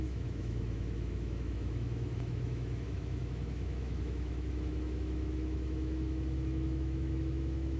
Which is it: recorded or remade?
remade